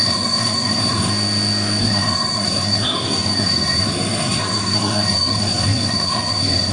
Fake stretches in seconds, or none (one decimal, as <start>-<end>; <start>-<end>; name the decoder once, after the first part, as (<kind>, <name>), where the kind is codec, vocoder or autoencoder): 0.0-1.1 (codec, SNAC); 1.8-6.7